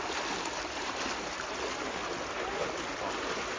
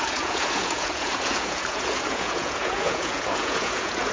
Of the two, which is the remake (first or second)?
second